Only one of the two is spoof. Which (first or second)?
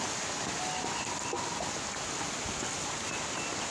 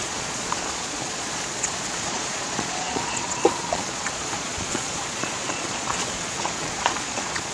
second